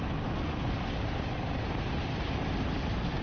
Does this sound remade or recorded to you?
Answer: recorded